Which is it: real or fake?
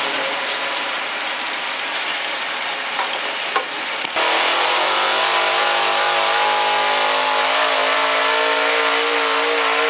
real